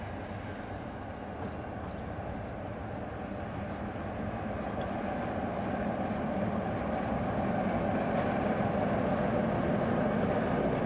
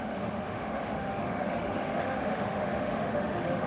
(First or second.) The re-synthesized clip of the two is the second